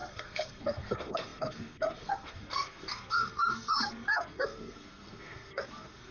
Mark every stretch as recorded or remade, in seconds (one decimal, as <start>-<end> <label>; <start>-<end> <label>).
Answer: 0.0-6.1 remade